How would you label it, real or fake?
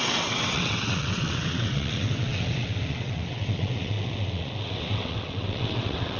fake